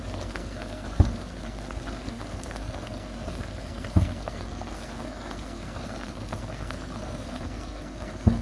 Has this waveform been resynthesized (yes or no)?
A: yes